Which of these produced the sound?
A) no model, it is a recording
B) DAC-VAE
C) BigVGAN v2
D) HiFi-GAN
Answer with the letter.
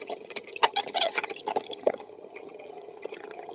D